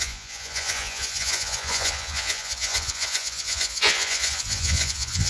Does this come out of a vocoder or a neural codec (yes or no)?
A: yes